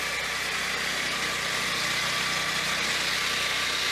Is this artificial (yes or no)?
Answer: no